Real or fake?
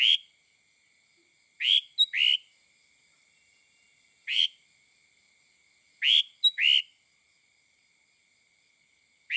real